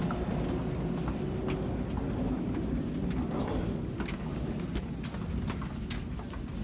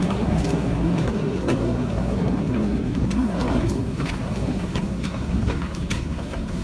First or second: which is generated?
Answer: second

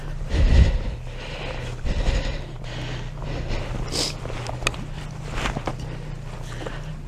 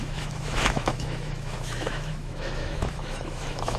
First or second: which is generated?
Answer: second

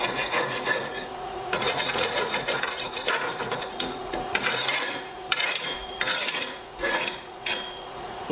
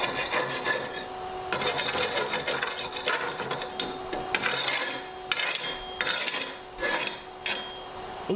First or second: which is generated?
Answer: first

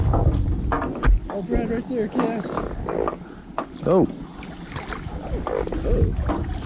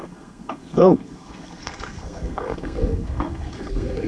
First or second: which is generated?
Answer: second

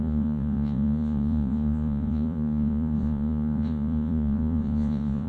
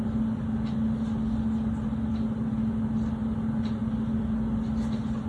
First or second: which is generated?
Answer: first